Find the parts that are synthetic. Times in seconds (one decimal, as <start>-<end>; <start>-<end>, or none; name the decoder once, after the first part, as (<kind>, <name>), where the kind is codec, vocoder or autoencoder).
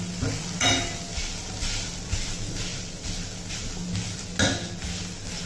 none